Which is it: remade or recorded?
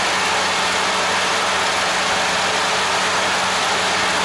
recorded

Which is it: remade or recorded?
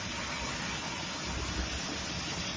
recorded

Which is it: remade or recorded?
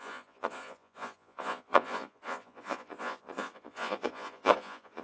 remade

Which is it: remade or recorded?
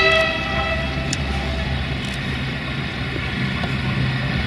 recorded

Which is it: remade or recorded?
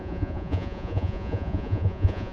remade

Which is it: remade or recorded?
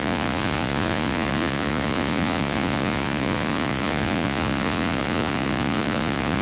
remade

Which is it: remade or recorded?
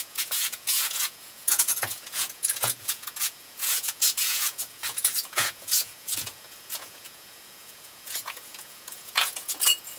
remade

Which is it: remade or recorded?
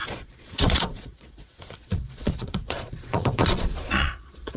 remade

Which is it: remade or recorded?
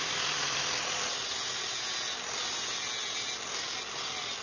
recorded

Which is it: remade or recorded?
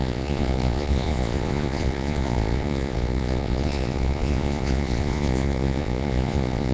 remade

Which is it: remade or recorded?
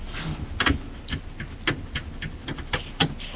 recorded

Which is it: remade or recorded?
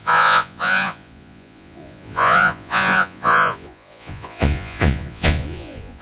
remade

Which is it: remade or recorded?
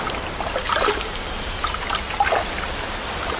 recorded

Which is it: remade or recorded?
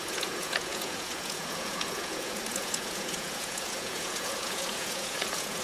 remade